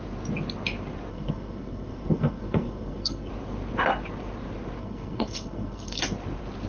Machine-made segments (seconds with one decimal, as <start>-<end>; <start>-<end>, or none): 1.1-3.3; 4.8-6.0